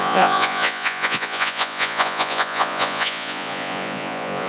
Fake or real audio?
fake